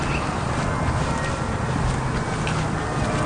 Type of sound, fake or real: real